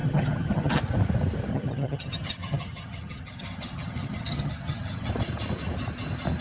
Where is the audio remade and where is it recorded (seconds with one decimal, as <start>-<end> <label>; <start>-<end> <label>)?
0.0-0.8 remade; 0.8-1.5 recorded; 1.5-5.1 remade; 5.1-6.4 recorded

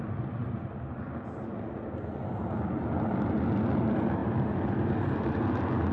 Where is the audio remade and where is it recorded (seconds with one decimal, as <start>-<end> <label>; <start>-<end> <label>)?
0.0-5.9 recorded

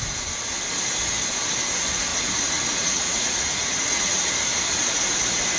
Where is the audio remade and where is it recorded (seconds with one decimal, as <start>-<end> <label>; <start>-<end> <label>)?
0.0-2.1 recorded; 2.1-4.3 remade; 4.3-5.6 recorded

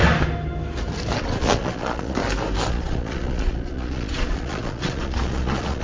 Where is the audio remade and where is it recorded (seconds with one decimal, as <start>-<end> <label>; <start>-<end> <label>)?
0.0-1.2 recorded; 1.2-2.2 remade; 2.2-2.7 recorded; 2.7-5.8 remade

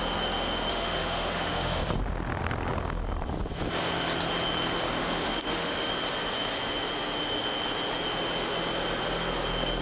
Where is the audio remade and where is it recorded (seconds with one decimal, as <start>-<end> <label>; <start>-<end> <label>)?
0.0-0.7 recorded; 0.7-1.8 remade; 1.8-5.0 recorded; 5.0-5.9 remade; 5.9-9.8 recorded